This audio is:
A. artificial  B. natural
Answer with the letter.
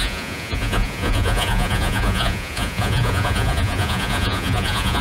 A